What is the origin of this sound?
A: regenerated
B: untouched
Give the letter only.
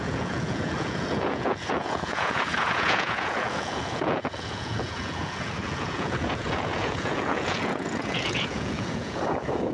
A